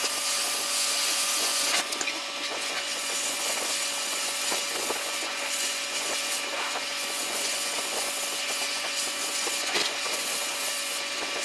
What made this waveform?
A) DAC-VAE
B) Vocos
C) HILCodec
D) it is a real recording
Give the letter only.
B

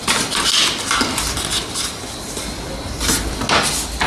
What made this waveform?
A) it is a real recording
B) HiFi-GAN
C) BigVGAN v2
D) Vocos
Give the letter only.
A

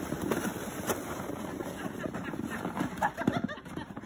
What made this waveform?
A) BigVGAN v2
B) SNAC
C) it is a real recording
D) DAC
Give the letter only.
A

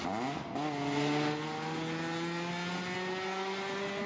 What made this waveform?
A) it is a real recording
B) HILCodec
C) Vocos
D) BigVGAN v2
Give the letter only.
A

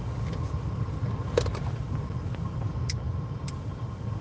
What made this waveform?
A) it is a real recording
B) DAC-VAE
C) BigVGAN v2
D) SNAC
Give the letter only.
A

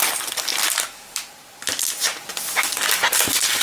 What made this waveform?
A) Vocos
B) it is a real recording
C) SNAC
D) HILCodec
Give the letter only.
B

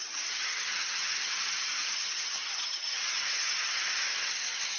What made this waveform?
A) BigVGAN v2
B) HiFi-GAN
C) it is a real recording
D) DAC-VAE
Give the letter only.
B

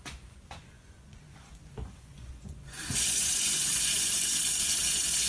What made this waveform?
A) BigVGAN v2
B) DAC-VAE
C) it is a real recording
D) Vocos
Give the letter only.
D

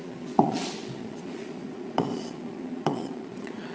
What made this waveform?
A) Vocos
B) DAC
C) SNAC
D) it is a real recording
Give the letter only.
A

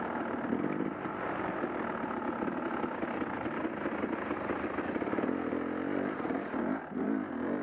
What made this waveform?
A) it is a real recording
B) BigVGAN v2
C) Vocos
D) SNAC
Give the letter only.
A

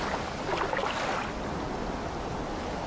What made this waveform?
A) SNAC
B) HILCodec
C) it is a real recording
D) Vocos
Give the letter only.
C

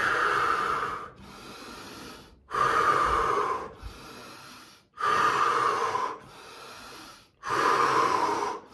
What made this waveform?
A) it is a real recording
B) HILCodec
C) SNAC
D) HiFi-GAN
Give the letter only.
A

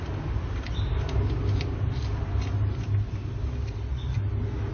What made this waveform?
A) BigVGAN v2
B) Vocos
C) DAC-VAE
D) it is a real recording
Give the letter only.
D